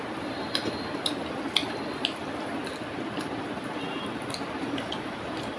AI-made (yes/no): no